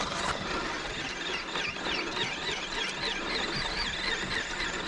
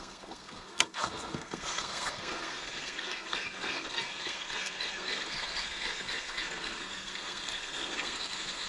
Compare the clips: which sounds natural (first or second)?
first